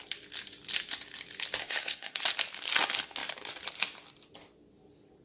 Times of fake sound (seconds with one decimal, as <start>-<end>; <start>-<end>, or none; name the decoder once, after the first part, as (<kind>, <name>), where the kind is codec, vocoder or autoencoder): 1.6-2.2 (codec, SNAC)